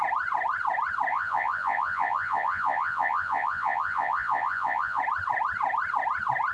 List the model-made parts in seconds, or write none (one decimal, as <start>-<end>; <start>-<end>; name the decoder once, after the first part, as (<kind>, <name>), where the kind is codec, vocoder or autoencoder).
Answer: 1.1-5.0 (vocoder, Vocos)